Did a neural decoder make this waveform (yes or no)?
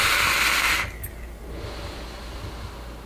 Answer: no